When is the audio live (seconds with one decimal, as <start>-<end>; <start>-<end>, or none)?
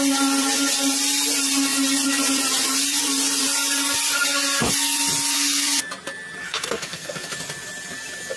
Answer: 0.0-6.4; 7.3-8.4